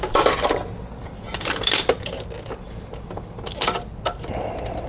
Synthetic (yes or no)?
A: no